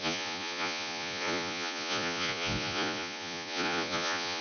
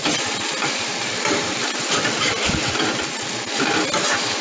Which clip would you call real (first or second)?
second